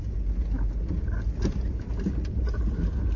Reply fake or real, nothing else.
real